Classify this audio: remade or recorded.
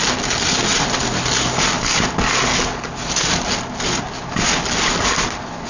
recorded